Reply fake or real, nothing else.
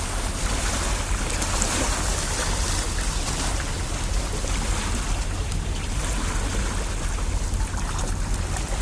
real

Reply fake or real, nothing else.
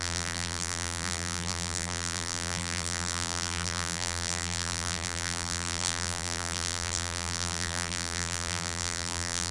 fake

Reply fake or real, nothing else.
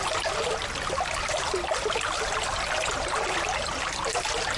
real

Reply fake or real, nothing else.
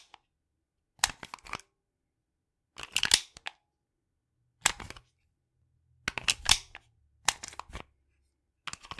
real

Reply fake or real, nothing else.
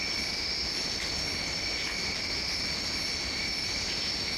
real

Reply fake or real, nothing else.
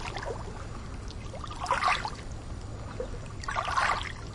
real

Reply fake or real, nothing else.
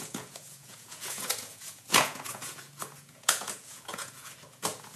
fake